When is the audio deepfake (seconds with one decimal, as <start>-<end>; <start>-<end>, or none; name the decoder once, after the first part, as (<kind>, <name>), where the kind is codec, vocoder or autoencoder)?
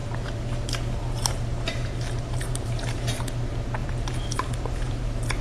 0.0-3.2 (vocoder, BigVGAN v2); 3.8-5.0